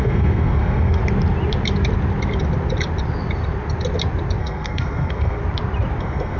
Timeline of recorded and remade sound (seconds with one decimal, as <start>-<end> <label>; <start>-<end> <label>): 0.0-1.0 remade; 1.0-4.4 recorded; 4.4-5.4 remade; 5.4-6.0 recorded; 6.0-6.4 remade